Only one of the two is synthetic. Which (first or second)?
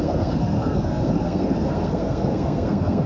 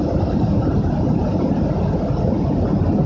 first